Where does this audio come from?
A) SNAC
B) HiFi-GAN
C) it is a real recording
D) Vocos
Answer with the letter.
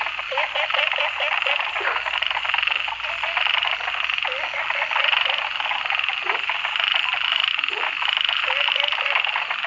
C